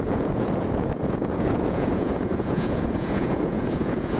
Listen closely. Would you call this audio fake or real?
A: fake